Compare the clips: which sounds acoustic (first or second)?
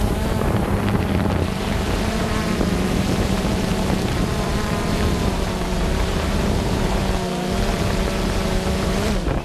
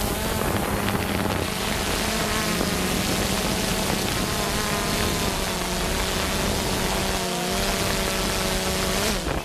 second